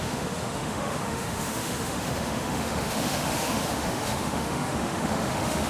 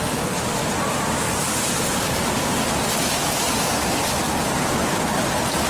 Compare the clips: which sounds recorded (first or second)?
second